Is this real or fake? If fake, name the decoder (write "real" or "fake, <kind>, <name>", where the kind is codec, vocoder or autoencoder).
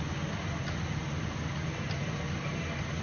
real